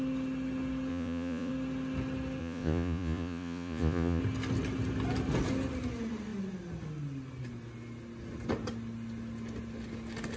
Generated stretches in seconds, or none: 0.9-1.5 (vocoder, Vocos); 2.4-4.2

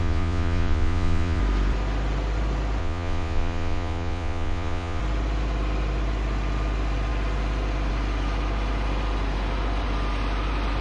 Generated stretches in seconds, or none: 0.0-1.4 (vocoder, Vocos); 2.8-5.0